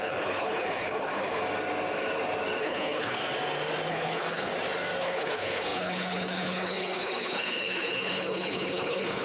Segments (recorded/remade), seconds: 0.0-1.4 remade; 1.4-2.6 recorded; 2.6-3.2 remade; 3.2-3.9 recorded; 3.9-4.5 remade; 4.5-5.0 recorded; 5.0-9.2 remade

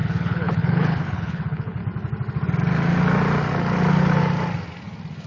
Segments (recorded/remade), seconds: 0.0-1.8 remade; 1.8-5.3 recorded